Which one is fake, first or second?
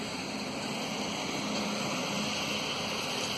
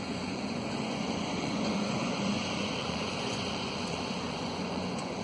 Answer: second